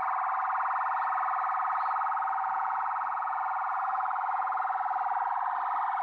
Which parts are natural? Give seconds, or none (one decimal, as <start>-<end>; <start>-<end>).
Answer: 0.0-2.4; 4.6-6.0